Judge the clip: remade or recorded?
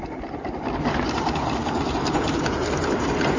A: remade